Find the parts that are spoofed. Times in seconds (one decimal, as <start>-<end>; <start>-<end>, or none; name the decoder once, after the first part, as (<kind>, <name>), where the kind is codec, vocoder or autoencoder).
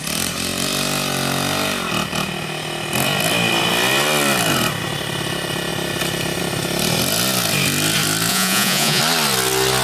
8.3-9.0 (vocoder, Vocos)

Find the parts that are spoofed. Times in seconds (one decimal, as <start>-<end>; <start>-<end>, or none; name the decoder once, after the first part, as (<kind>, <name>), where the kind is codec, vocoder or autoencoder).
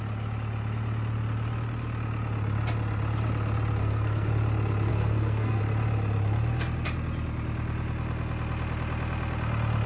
3.8-4.3 (codec, SNAC); 4.9-5.6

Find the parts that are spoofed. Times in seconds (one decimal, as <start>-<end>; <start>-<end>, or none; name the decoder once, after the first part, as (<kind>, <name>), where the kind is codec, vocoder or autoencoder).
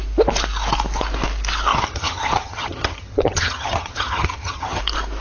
1.7-4.8 (vocoder, HiFi-GAN)